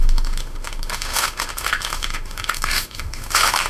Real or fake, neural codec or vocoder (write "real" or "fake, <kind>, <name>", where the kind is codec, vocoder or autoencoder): fake, autoencoder, DAC-VAE